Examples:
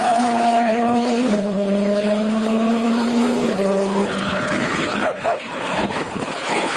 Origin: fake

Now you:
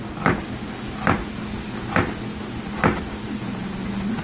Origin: real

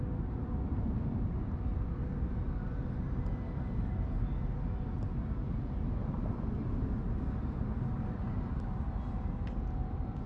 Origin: real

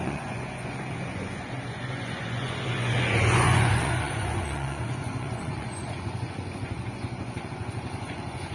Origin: fake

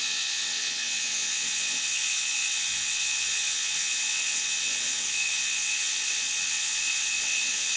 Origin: fake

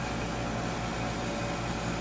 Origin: real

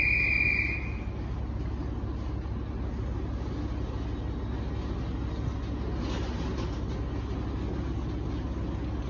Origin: real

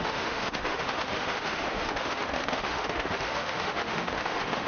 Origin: fake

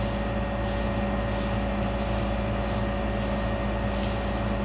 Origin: real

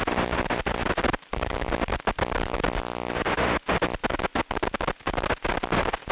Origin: real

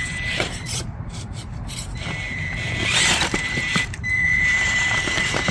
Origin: fake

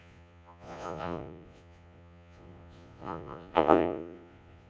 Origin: fake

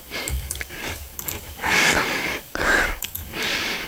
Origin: fake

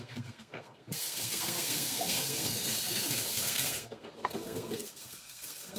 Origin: fake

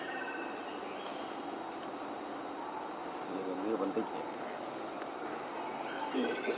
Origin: real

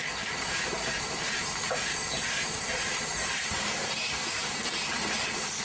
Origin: fake